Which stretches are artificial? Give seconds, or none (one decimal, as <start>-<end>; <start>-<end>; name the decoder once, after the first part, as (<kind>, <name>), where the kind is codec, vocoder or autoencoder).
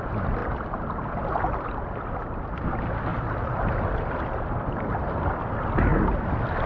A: 0.4-2.7 (vocoder, BigVGAN v2); 3.1-5.3; 5.9-6.7